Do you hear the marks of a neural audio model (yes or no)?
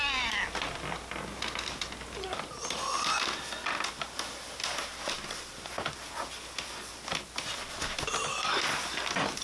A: no